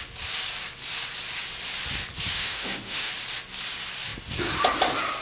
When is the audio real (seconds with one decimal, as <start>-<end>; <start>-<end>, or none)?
0.0-2.3; 3.1-5.2